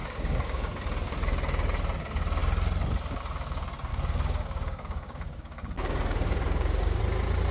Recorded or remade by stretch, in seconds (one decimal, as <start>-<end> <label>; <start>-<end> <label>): 0.0-0.7 remade; 0.7-3.9 recorded; 3.9-7.0 remade; 7.0-7.5 recorded